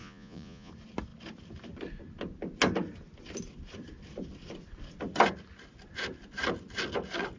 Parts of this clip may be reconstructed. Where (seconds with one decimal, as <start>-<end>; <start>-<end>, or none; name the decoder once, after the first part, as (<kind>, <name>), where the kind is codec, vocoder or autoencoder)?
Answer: 0.0-0.7 (vocoder, Vocos)